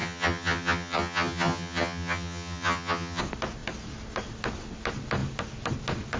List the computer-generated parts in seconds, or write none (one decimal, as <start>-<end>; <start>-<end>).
0.0-3.2